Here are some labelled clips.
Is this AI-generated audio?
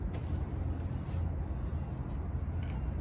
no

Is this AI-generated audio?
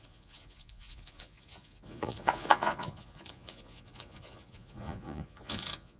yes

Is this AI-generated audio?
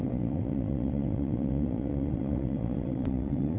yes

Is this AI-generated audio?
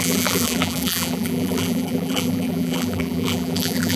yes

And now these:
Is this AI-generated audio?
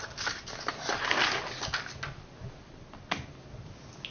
no